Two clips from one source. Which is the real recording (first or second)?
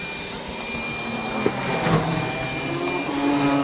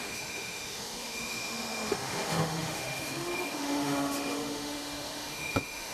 first